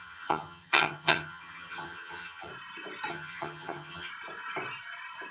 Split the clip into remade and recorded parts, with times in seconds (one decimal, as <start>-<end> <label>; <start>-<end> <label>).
0.0-2.5 remade; 2.5-3.1 recorded; 3.1-4.1 remade; 4.1-5.3 recorded